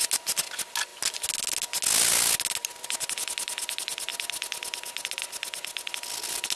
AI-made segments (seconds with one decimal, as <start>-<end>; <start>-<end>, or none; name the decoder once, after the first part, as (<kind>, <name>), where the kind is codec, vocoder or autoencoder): none